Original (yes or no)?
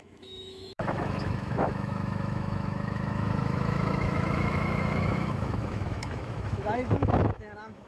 no